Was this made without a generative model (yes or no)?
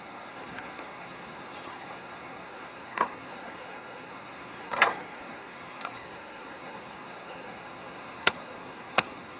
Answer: no